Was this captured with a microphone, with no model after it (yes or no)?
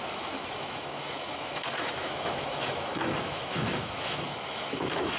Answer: no